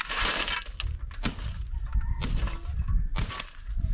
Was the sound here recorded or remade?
recorded